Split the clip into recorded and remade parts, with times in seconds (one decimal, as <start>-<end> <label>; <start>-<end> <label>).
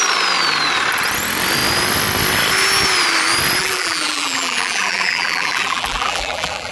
0.0-3.6 recorded; 3.6-6.7 remade